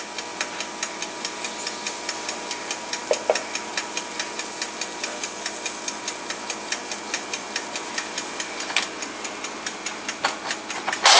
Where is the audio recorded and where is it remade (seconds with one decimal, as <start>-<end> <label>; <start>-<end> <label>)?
0.0-11.2 recorded